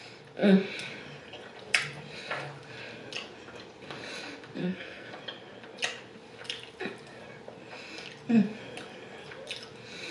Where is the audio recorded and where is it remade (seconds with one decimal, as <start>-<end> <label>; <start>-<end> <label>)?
0.0-4.6 recorded; 4.6-5.1 remade; 5.1-10.1 recorded